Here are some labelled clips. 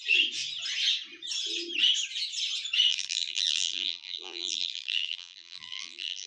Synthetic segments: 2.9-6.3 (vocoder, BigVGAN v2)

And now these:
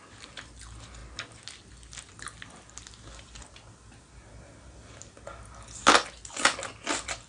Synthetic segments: none

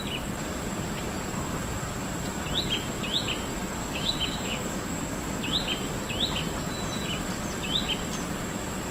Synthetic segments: 3.8-5.4 (codec, DAC)